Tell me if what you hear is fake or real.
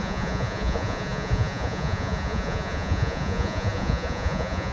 fake